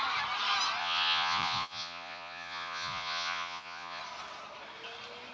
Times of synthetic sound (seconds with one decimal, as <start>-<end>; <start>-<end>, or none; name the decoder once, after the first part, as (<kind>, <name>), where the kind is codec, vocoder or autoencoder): 0.8-4.0 (vocoder, Vocos)

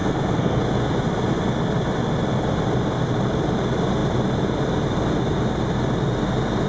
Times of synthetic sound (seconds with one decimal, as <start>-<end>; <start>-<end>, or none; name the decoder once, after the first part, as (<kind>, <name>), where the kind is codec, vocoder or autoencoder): 0.0-0.6 (codec, SNAC)

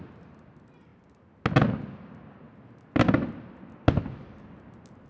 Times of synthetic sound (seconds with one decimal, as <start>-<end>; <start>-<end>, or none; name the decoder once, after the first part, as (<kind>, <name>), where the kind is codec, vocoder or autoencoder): none

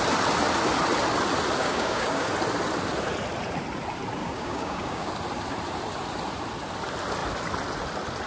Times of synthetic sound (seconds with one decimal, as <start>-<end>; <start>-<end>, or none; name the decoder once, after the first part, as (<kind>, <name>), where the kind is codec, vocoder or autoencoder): 1.6-2.3 (codec, DAC); 4.2-5.1

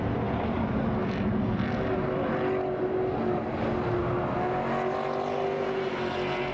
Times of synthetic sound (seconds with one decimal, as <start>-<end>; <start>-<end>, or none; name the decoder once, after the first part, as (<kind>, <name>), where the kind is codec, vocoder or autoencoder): none